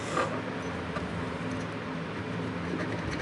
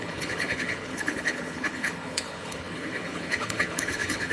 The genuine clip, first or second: first